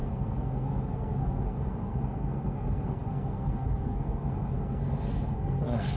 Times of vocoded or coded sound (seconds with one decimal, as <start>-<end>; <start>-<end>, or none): 0.0-6.0